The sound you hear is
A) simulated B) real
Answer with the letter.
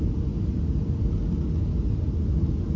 B